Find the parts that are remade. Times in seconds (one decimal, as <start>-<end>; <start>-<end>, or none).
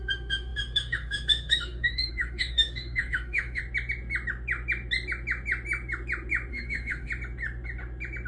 0.0-3.6; 6.5-7.1